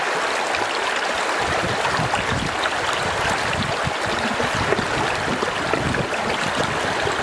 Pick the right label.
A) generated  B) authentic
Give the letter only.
B